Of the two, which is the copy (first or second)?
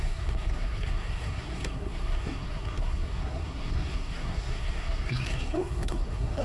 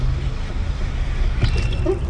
first